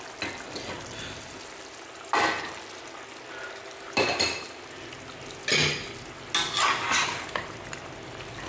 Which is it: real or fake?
real